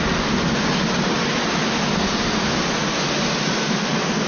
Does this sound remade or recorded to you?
recorded